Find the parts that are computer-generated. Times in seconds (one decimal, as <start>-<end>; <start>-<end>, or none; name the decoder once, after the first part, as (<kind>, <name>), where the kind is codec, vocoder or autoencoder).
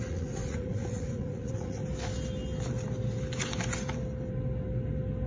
0.0-1.8 (vocoder, Vocos)